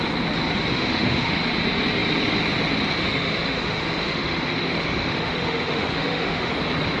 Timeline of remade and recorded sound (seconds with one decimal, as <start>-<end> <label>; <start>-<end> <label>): 0.0-0.7 recorded; 0.7-1.4 remade; 1.4-3.0 recorded; 3.0-6.5 remade; 6.5-7.0 recorded